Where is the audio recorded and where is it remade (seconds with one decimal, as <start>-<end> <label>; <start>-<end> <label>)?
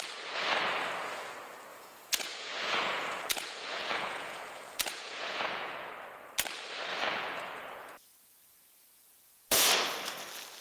0.0-1.7 recorded; 1.7-5.9 remade; 5.9-6.9 recorded; 6.9-9.7 remade; 9.7-10.6 recorded